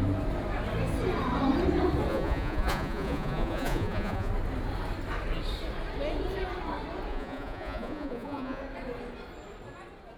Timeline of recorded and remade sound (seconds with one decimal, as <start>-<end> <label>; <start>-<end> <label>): 0.0-2.1 recorded; 2.1-4.3 remade; 4.3-7.1 recorded; 7.1-8.6 remade; 8.6-10.2 recorded